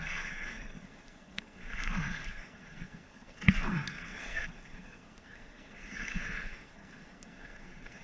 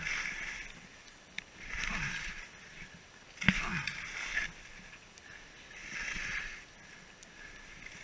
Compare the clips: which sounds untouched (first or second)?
second